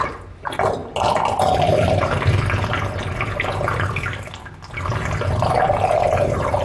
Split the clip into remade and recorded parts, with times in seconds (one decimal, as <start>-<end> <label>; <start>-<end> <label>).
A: 0.0-6.6 recorded